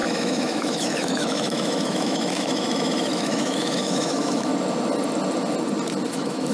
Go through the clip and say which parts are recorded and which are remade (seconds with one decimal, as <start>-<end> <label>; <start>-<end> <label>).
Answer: 0.0-4.5 remade; 4.5-6.1 recorded; 6.1-6.5 remade